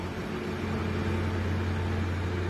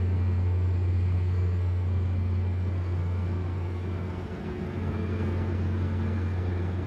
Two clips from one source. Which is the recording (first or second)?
first